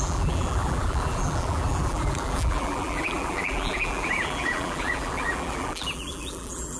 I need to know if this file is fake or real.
fake